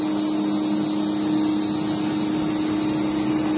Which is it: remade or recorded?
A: recorded